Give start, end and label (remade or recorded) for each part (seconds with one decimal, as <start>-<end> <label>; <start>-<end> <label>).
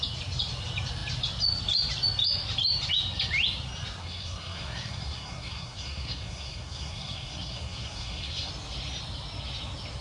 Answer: 0.0-4.0 recorded; 4.0-8.5 remade; 8.5-10.0 recorded